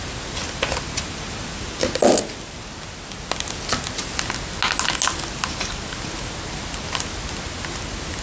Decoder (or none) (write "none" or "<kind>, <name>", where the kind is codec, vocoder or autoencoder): none